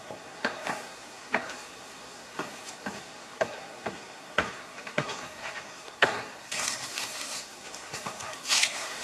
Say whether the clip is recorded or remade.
remade